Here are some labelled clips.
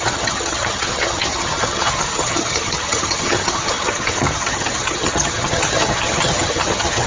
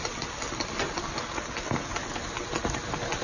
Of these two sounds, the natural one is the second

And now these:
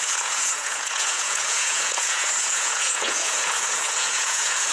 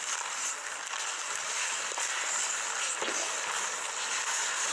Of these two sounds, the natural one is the second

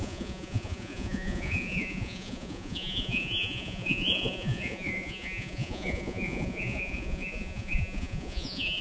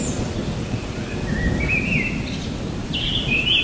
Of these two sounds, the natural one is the second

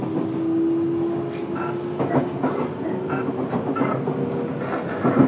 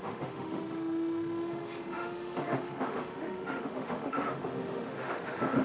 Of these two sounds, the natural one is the first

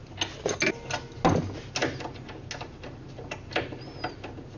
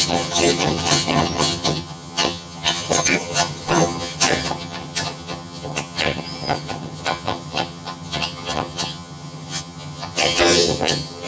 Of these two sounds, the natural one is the first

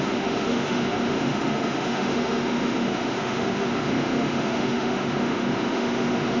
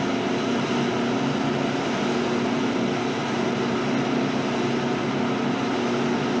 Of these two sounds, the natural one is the second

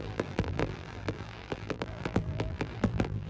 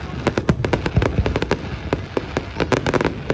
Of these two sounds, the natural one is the second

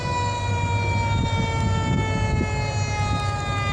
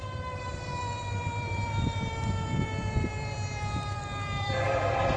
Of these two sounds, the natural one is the first